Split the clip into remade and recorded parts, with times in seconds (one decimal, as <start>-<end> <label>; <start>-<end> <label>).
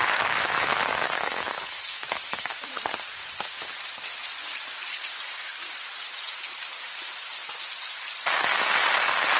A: 0.0-2.7 remade; 2.7-9.4 recorded